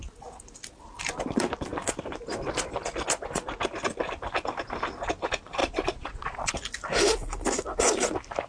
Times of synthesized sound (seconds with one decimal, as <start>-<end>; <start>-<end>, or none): 5.6-6.5